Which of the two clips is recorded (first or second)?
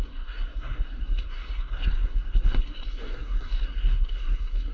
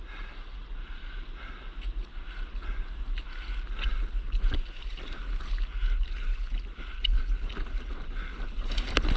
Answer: second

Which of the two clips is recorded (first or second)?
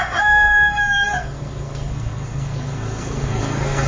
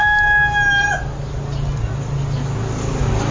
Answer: second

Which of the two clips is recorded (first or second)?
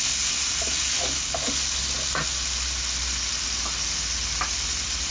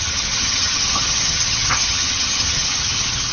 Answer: first